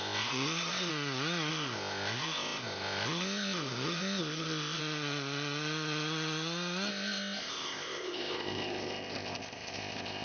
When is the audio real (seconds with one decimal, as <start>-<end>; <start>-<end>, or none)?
0.9-1.5; 4.8-6.9